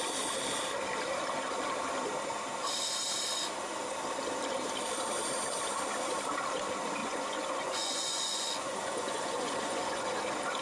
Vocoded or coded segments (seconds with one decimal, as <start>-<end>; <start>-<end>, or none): 7.0-10.2